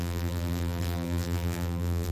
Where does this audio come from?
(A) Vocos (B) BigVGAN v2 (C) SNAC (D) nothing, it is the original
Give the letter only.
B